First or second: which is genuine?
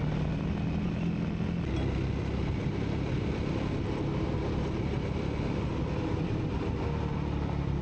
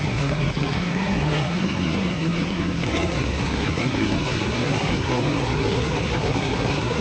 first